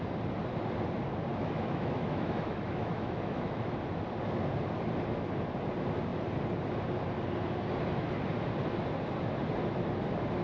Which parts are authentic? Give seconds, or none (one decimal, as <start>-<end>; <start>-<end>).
0.0-1.3; 3.7-10.4

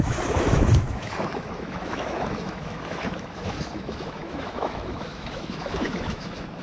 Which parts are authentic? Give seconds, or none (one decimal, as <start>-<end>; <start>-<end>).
none